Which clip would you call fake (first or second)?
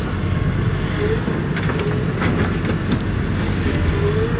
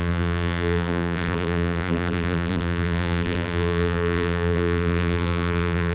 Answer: second